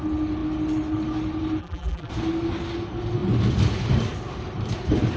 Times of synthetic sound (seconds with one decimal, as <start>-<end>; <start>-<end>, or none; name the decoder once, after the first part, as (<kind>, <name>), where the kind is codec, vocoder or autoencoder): 1.6-2.1 (vocoder, BigVGAN v2)